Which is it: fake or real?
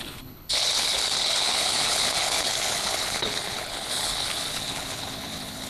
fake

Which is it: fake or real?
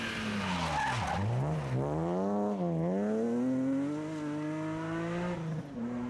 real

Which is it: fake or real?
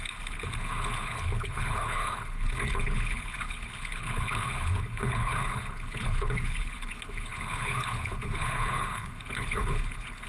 fake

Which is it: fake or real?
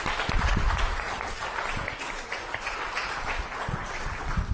real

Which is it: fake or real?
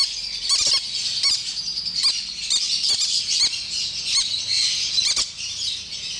real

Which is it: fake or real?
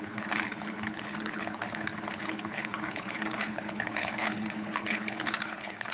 fake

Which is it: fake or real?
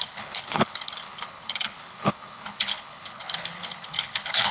fake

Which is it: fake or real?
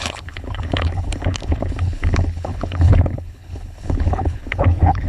fake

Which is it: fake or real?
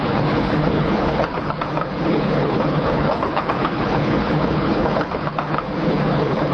fake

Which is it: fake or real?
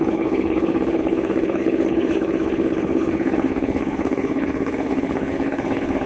fake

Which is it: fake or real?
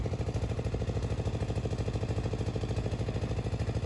real